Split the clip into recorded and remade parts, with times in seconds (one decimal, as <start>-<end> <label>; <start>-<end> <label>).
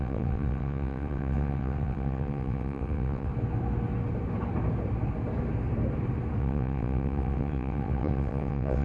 0.0-3.3 remade; 3.3-6.4 recorded; 6.4-8.8 remade